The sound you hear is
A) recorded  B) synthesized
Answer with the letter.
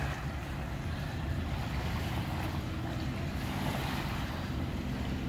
A